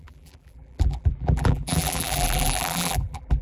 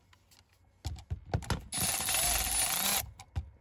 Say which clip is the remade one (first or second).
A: first